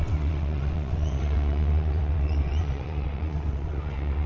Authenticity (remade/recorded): remade